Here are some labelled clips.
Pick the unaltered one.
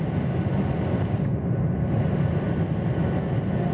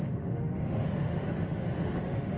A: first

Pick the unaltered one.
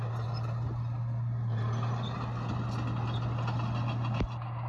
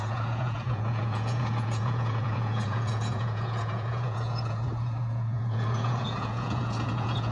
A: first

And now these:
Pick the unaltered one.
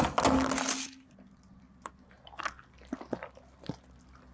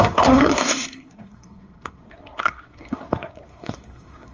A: first